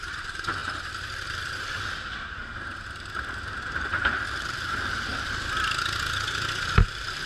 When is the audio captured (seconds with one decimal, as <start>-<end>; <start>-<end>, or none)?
5.1-6.8